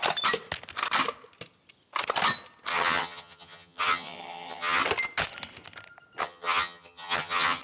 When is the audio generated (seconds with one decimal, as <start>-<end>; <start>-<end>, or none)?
2.7-4.8; 6.2-7.6